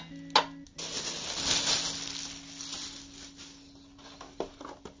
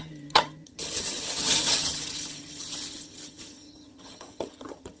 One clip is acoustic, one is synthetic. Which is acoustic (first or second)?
first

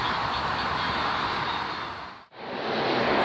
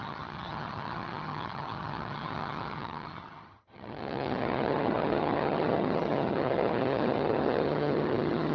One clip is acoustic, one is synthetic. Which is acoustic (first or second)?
first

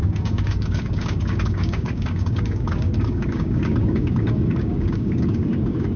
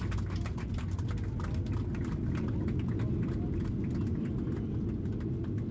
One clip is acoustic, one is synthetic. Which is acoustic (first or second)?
second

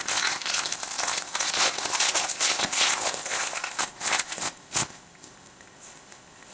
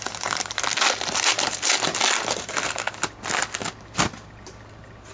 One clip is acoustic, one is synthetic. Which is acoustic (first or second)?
second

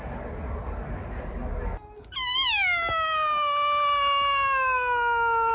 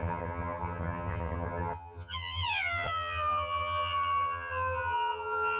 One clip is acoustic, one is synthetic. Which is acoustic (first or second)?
first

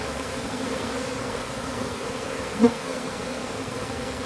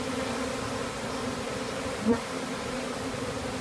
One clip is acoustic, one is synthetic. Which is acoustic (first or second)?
second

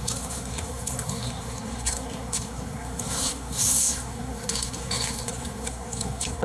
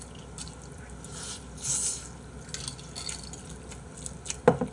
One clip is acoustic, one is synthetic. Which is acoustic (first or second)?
second